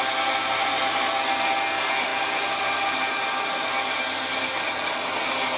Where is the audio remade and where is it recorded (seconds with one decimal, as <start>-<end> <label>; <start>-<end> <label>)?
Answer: 0.0-5.6 recorded

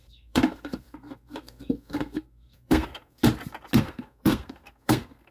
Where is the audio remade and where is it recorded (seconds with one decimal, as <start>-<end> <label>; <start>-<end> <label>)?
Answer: 0.0-3.2 remade; 3.2-3.8 recorded; 3.8-5.3 remade

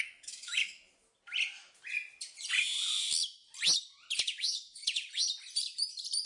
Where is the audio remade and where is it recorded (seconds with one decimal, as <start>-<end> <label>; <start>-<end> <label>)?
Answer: 0.0-1.1 remade; 1.1-4.2 recorded; 4.2-4.8 remade; 4.8-6.3 recorded